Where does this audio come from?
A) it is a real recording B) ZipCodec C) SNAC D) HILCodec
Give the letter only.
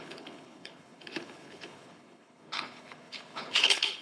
D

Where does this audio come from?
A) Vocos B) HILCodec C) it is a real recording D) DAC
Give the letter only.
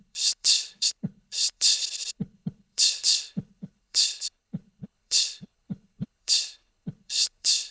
B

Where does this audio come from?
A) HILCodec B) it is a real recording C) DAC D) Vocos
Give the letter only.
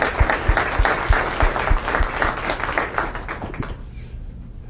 B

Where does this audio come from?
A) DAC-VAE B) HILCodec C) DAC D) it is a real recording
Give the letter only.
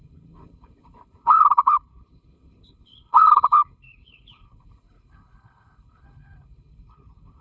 B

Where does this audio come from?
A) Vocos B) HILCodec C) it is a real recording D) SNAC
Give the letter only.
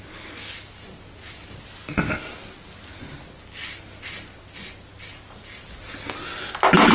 C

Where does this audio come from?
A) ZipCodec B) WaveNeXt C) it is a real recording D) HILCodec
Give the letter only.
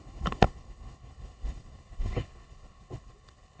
D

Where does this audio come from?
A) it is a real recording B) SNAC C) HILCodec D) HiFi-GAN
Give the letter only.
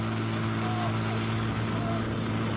A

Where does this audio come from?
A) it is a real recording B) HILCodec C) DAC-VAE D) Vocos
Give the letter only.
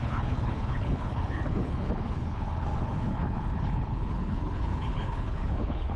B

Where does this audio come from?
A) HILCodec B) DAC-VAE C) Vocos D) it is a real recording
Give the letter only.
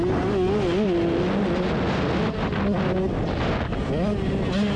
D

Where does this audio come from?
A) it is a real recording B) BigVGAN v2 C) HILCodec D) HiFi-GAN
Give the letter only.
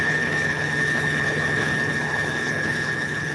C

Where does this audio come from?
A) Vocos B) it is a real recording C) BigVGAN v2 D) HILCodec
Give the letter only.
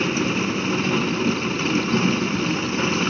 B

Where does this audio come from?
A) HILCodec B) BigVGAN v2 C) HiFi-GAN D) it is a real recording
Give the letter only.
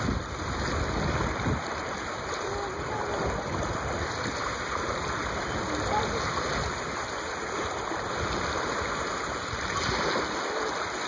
D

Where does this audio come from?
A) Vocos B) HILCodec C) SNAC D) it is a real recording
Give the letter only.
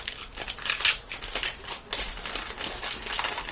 D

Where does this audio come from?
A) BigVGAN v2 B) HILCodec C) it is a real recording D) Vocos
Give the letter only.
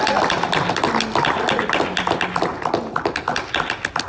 C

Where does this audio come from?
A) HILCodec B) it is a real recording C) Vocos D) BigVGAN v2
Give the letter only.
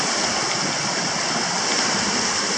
B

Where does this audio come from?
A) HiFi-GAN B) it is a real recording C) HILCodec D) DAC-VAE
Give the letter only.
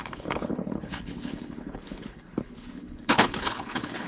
C